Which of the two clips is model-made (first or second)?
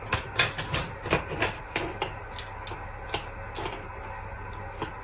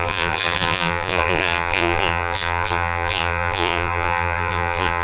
second